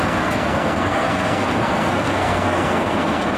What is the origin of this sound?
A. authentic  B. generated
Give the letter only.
B